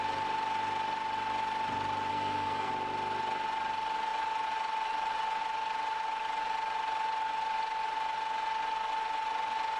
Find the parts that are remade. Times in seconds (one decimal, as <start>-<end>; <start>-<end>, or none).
2.1-2.7